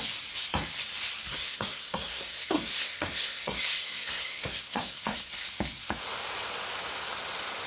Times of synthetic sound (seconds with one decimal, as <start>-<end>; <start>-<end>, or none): 1.3-5.3